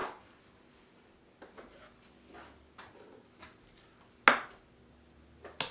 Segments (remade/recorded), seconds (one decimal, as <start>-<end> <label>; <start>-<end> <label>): 0.0-5.7 recorded